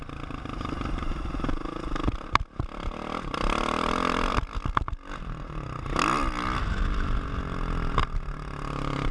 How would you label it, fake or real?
real